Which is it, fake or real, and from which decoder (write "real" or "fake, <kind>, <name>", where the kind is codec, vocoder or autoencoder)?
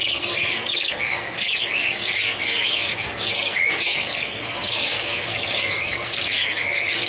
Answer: fake, codec, SNAC